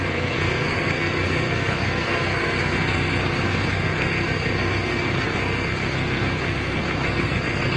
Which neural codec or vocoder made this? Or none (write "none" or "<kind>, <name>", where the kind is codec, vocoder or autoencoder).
codec, SNAC